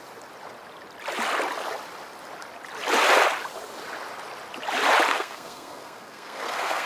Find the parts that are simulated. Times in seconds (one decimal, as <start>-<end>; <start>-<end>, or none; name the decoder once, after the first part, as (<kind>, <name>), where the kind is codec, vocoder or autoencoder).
5.1-6.9 (codec, SNAC)